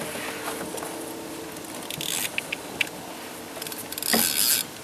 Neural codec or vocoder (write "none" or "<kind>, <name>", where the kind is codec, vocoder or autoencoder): none